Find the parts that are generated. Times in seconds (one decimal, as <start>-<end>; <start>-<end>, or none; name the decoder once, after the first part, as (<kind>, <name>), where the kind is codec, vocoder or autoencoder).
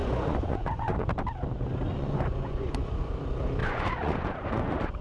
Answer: 0.0-1.1 (vocoder, Vocos); 1.9-3.0; 3.6-5.0